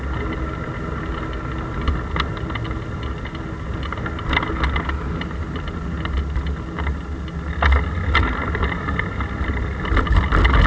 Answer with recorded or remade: recorded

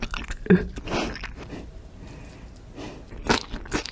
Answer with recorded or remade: recorded